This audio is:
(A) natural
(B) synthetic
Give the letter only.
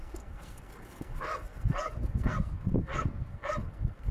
B